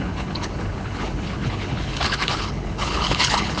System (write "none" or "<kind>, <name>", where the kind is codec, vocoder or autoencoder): codec, HILCodec